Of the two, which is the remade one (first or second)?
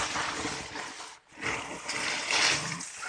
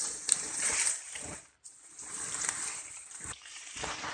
second